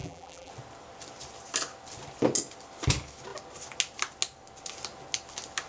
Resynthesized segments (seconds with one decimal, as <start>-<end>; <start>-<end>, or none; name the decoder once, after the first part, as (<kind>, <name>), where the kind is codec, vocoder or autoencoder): 0.0-0.5 (vocoder, BigVGAN v2)